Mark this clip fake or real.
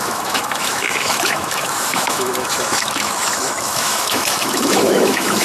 fake